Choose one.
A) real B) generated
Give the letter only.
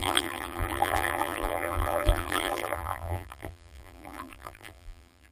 B